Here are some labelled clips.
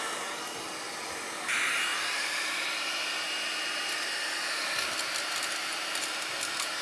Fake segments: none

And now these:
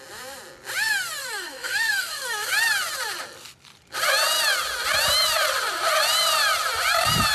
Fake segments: 1.2-2.5 (codec, SNAC)

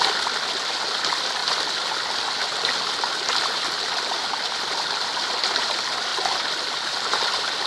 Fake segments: none

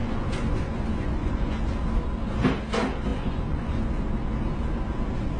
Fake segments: 0.0-1.6 (vocoder, Vocos); 3.1-3.9

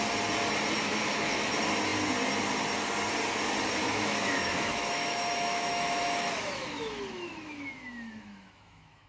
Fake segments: 0.9-1.5 (autoencoder, DAC-VAE); 3.8-9.1

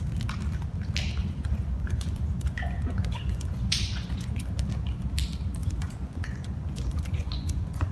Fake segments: 1.2-4.5 (vocoder, Vocos); 5.6-7.9

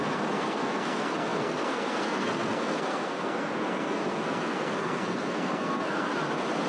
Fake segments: 0.0-6.1 (codec, SNAC)